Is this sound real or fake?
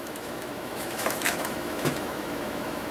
fake